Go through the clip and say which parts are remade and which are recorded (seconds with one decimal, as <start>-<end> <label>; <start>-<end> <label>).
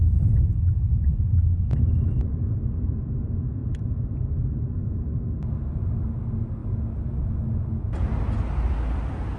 0.0-9.4 recorded